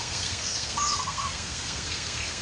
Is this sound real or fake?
fake